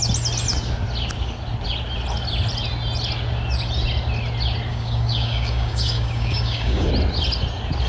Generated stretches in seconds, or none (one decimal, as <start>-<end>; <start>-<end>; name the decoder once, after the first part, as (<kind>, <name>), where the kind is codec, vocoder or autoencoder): 4.7-6.9 (codec, DAC)